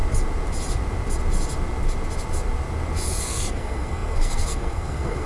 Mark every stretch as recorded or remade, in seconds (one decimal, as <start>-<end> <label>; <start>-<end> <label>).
0.0-3.2 recorded; 3.2-5.3 remade